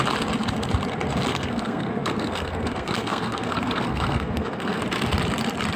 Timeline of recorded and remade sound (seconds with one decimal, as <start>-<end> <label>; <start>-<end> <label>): 0.0-1.3 recorded; 1.3-4.8 remade; 4.8-5.8 recorded